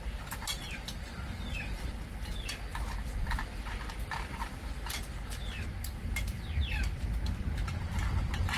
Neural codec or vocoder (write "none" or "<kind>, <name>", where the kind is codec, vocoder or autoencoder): none